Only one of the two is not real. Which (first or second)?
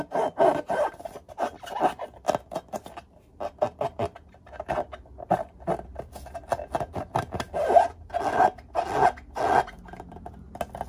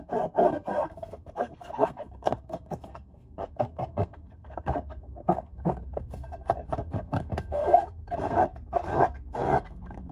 second